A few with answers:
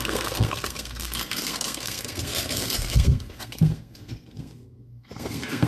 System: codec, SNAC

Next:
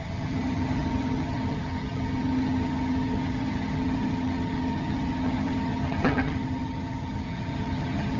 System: vocoder, HiFi-GAN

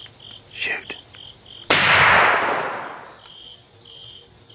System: none